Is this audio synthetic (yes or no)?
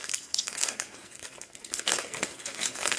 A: yes